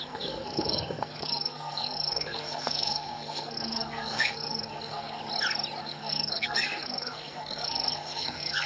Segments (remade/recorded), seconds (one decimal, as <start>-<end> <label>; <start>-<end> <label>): 0.0-5.2 remade; 5.2-5.8 recorded; 5.8-8.7 remade